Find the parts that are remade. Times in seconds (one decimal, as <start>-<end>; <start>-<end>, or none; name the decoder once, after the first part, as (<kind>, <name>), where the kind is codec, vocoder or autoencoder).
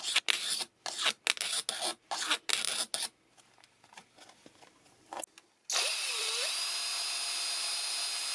none